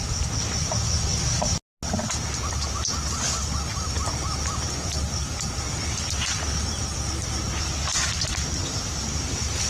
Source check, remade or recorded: recorded